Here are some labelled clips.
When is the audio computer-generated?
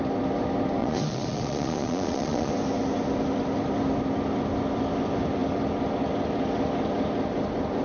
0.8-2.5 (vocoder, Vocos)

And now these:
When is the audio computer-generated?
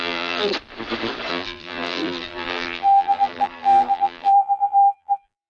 0.0-0.5 (vocoder, BigVGAN v2); 1.3-5.5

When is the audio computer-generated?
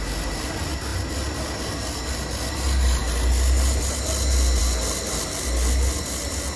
none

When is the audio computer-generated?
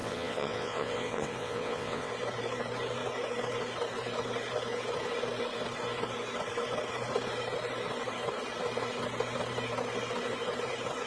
0.0-2.1 (vocoder, WaveNeXt)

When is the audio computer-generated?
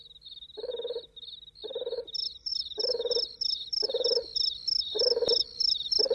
none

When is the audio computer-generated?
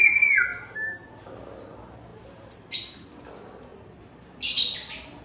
none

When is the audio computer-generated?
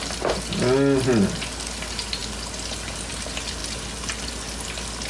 none